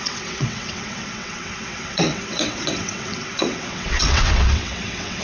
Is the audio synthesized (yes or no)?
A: yes